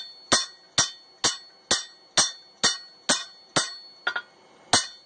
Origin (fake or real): real